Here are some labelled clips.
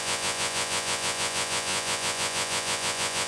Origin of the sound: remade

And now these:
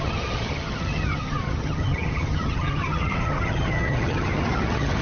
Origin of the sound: remade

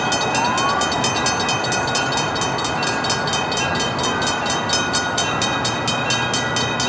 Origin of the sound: recorded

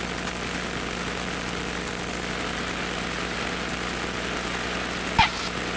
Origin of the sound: recorded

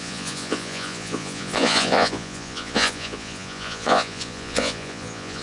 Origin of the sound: remade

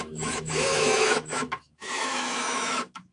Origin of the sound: remade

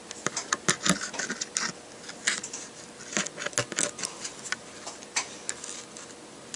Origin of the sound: recorded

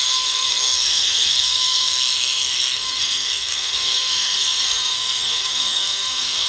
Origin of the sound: remade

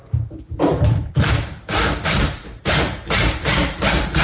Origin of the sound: remade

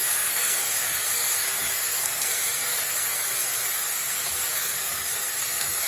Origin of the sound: remade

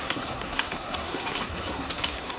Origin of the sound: remade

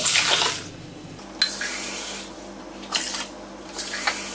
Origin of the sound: recorded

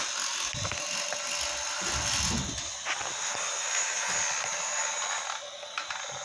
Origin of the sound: recorded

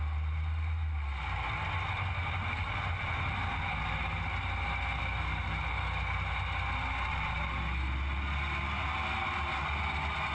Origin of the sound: recorded